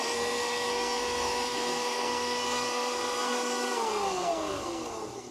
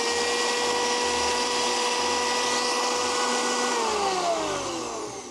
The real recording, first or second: second